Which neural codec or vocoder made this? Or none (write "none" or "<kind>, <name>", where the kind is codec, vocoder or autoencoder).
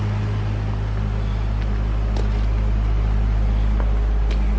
none